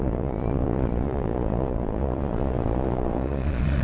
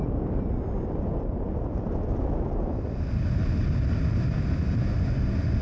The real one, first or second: second